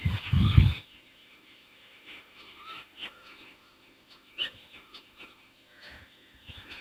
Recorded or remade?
remade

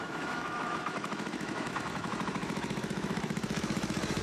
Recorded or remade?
remade